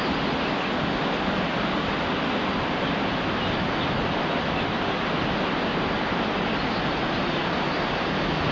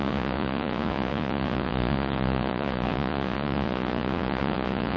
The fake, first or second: second